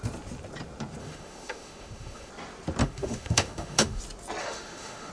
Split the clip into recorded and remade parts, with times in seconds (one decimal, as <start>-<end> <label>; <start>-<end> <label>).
0.0-1.0 recorded; 1.0-2.3 remade; 2.3-2.8 recorded; 2.8-4.0 remade; 4.0-4.4 recorded; 4.4-5.1 remade